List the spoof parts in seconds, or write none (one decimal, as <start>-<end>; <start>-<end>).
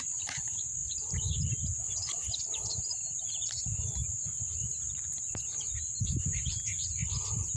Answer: 0.0-7.6